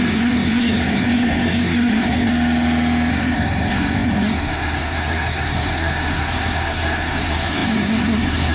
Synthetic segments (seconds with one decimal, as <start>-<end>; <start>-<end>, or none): 0.0-2.3; 3.1-8.5